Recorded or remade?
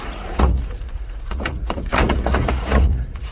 remade